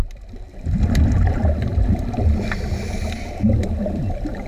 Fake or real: real